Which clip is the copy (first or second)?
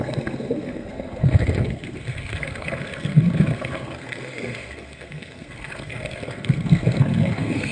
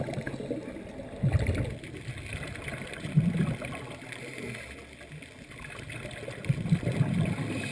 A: first